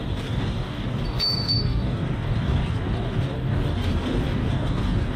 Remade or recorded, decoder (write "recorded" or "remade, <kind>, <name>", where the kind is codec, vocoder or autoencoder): remade, codec, DAC